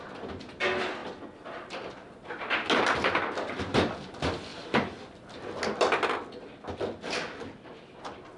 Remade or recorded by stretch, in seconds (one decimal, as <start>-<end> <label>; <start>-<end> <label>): 0.0-8.4 recorded